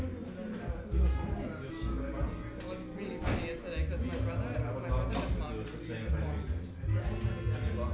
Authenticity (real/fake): real